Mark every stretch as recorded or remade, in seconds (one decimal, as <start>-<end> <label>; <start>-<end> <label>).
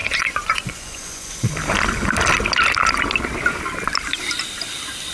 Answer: 0.0-1.5 remade; 1.5-5.1 recorded